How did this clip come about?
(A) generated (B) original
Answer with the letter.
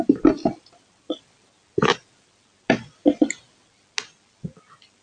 B